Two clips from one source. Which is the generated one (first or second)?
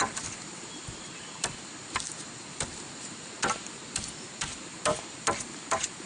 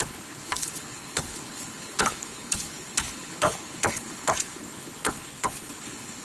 second